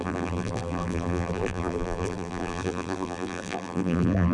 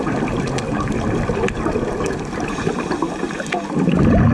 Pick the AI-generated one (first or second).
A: first